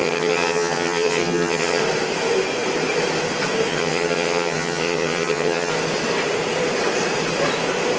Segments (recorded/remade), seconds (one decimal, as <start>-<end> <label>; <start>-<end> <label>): 0.0-1.8 remade; 1.8-3.7 recorded; 3.7-5.7 remade; 5.7-8.0 recorded